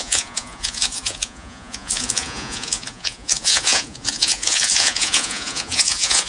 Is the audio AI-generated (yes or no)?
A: yes